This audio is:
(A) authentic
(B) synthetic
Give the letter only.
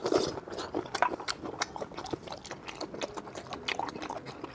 A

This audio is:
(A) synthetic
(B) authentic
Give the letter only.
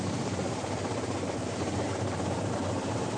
A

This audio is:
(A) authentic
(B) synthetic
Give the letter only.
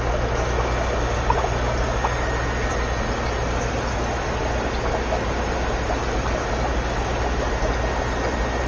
A